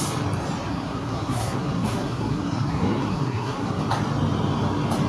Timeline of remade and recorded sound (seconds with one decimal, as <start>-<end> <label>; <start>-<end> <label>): 0.0-0.7 recorded; 0.7-3.8 remade; 3.8-5.1 recorded